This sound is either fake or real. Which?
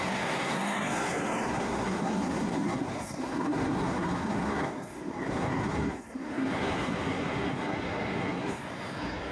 fake